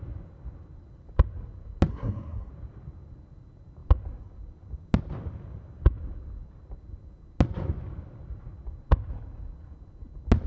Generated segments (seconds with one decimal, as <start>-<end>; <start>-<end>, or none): 1.9-2.5